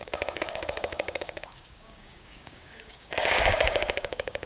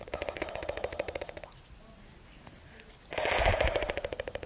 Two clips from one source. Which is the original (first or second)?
second